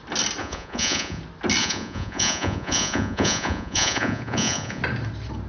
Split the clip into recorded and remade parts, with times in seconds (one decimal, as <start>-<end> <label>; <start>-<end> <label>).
0.0-0.4 recorded; 0.4-1.2 remade; 1.2-1.6 recorded; 1.6-4.8 remade; 4.8-5.5 recorded